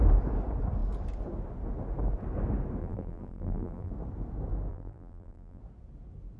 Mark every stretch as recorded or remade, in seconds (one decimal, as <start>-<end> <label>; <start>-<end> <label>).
0.0-2.8 recorded; 2.8-3.9 remade; 3.9-4.7 recorded; 4.7-5.6 remade; 5.6-6.4 recorded